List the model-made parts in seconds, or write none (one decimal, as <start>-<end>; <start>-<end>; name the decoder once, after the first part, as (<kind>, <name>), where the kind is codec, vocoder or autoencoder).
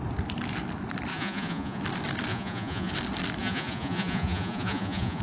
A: 1.1-1.8 (vocoder, Vocos); 2.3-2.9; 3.4-5.2